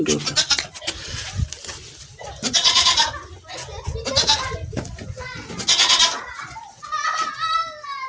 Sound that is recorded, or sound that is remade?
recorded